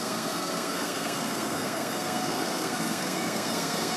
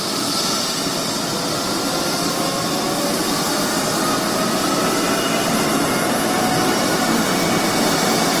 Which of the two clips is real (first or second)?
second